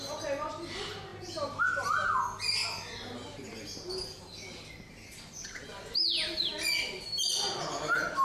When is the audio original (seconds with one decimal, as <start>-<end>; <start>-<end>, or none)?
0.0-8.2